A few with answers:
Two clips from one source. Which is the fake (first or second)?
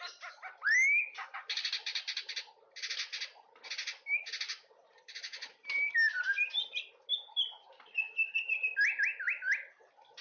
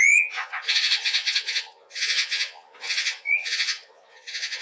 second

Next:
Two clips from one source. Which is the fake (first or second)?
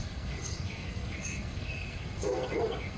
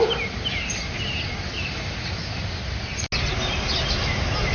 first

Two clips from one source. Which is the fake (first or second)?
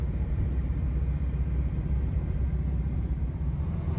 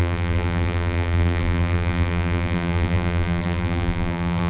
second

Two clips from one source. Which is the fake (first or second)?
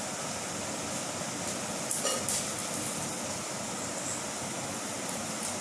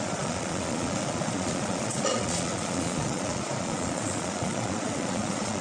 second